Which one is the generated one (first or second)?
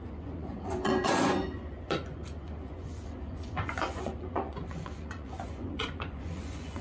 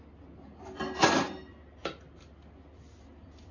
first